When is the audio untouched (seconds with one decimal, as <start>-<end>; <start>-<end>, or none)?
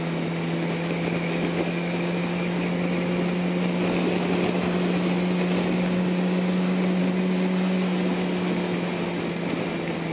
0.0-10.1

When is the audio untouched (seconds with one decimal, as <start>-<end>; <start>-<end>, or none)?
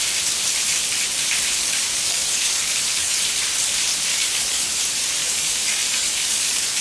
0.0-1.6; 3.2-4.1; 4.8-5.2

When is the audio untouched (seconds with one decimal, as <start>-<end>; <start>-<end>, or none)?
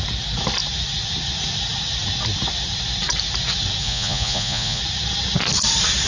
0.0-3.8; 4.8-6.1